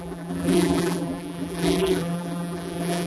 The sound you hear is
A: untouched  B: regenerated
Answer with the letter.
B